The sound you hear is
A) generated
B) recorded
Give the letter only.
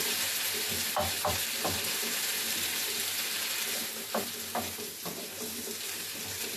A